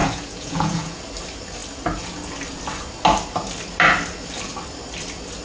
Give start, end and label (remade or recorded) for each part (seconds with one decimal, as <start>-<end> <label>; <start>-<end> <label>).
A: 0.0-1.0 remade; 1.0-5.4 recorded